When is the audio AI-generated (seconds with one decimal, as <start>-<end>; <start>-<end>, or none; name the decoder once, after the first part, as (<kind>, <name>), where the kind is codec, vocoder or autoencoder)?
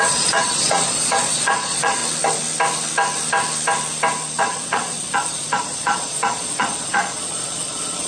0.0-2.0 (vocoder, Vocos); 4.4-8.1